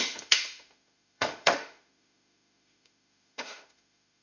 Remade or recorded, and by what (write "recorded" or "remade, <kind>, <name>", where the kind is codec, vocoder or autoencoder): remade, autoencoder, DAC-VAE